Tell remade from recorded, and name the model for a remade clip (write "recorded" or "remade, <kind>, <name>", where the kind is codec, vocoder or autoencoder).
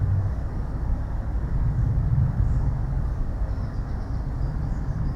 remade, codec, DAC